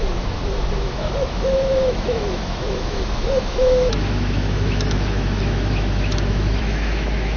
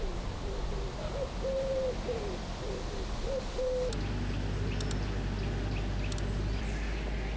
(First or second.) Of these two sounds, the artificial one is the first